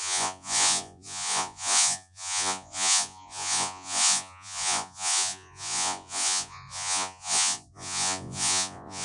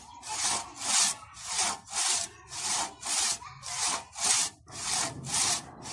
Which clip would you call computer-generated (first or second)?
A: first